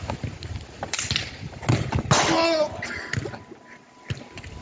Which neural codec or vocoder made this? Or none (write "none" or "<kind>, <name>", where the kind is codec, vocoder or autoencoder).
none